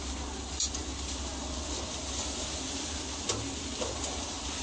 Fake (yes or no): no